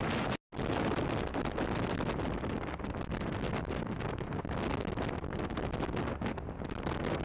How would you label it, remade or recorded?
recorded